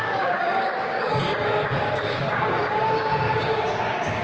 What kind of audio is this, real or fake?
fake